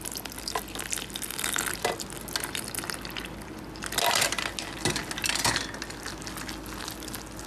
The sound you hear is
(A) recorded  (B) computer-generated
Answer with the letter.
A